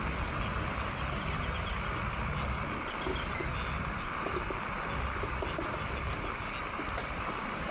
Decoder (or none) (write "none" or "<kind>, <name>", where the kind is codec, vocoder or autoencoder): none